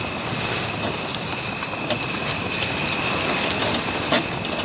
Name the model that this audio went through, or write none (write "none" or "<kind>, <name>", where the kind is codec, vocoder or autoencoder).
none